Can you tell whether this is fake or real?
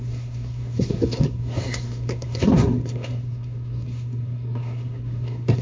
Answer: fake